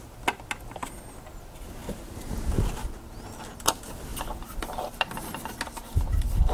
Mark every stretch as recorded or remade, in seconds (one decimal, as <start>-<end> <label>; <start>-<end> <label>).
0.0-6.5 recorded